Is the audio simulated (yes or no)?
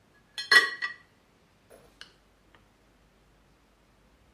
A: no